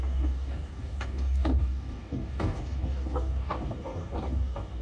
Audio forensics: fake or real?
fake